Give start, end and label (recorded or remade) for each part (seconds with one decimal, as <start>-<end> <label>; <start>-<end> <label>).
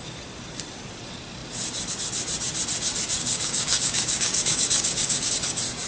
0.0-3.2 recorded; 3.2-5.3 remade; 5.3-5.9 recorded